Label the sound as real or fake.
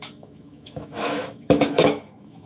fake